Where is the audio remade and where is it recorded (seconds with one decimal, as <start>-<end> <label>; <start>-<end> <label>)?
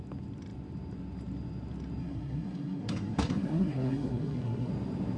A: 0.0-2.0 recorded; 2.0-4.7 remade; 4.7-5.2 recorded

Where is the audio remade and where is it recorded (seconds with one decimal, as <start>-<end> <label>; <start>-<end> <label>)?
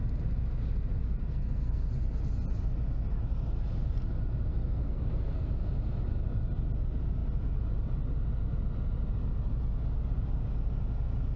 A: 0.0-1.0 recorded; 1.0-1.9 remade; 1.9-4.5 recorded; 4.5-5.5 remade; 5.5-11.4 recorded